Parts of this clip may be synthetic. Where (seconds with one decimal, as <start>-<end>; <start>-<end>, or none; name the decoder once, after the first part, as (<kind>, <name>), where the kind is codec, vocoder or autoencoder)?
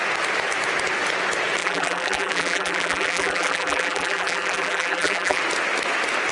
1.6-5.4 (vocoder, BigVGAN v2)